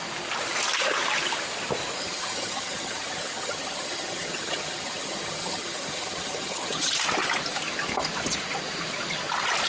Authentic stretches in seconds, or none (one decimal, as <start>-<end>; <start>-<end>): 0.0-2.0; 6.9-9.7